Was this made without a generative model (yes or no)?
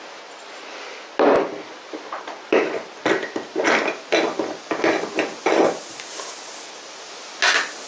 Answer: yes